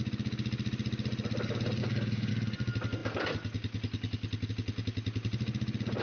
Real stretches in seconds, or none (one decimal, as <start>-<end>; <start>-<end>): 0.0-1.8; 2.3-6.0